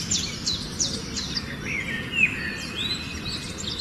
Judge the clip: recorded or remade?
recorded